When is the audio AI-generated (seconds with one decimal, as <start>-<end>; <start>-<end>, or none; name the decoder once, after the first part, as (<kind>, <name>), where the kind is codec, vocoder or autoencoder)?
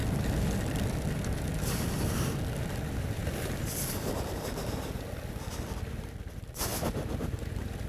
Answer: 0.0-1.3 (vocoder, BigVGAN v2); 3.2-4.9